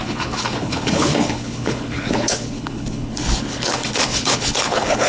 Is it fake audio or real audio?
fake